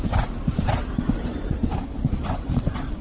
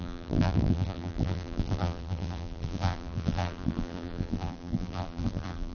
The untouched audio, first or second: first